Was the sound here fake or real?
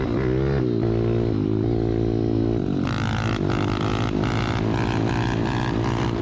real